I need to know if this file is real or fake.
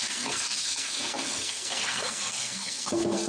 fake